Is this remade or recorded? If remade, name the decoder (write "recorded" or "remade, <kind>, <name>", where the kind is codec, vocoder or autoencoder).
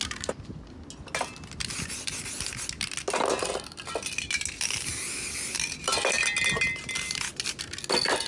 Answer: recorded